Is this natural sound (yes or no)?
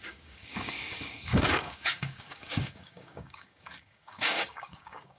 no